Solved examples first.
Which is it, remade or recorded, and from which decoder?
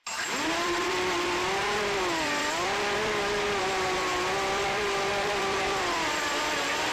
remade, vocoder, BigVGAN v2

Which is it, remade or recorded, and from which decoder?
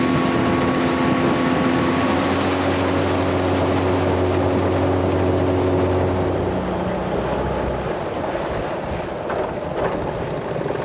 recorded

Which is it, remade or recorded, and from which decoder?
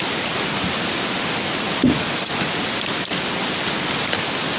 recorded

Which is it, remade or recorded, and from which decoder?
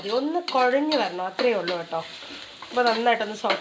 recorded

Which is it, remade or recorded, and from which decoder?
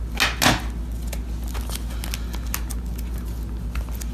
recorded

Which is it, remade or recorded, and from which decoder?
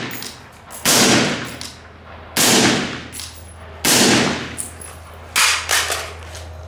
recorded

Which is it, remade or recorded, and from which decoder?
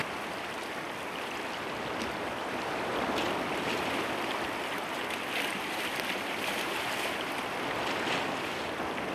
recorded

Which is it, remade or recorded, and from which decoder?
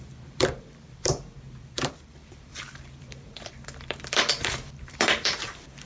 remade, vocoder, BigVGAN v2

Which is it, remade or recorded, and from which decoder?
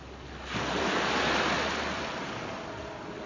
recorded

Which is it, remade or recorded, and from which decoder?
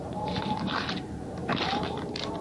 remade, vocoder, BigVGAN v2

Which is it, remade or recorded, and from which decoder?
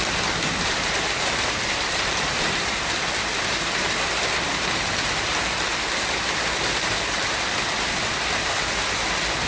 remade, vocoder, BigVGAN v2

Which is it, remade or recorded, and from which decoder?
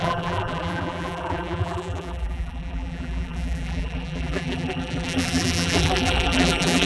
remade, vocoder, BigVGAN v2